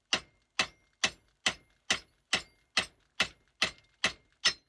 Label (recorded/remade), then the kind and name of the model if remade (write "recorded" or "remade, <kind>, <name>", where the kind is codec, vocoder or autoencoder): recorded